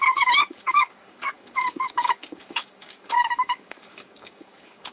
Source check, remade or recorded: remade